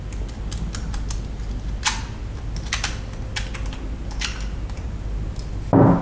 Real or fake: real